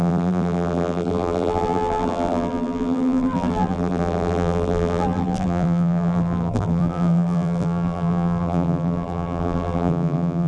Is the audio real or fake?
fake